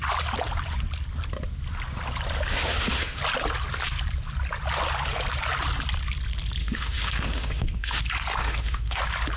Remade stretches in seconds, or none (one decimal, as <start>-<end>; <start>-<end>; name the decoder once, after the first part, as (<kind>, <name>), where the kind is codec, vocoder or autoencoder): 2.5-3.2 (autoencoder, DAC-VAE); 6.6-8.0; 8.4-9.0